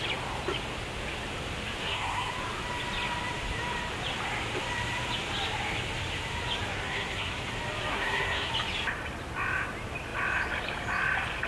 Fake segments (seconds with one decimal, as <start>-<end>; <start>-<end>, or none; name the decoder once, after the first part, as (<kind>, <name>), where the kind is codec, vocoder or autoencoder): 1.8-2.3 (codec, SNAC); 6.7-7.4; 7.9-8.5